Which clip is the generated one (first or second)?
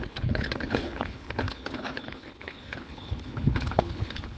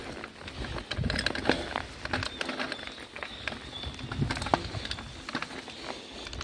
first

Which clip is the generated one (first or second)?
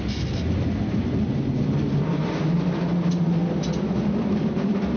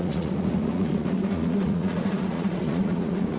second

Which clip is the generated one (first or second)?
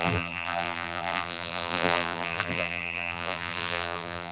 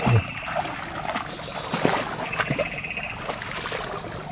first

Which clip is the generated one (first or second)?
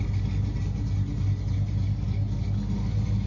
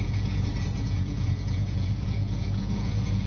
second